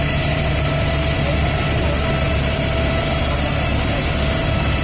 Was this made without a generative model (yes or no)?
yes